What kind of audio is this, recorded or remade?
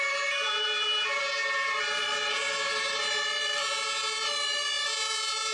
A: recorded